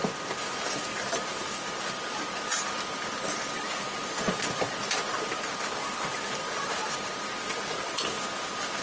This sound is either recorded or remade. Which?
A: remade